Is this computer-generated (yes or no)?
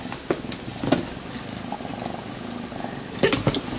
no